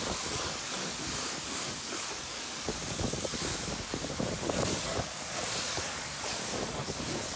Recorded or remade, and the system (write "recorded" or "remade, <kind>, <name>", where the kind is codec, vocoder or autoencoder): remade, codec, DAC